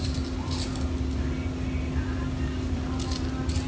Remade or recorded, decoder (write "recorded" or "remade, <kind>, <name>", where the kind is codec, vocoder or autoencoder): recorded